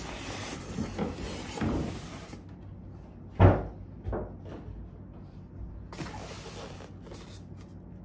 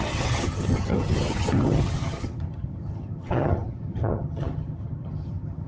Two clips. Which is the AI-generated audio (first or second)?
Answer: second